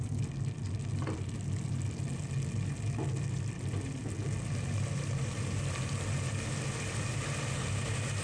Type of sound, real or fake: real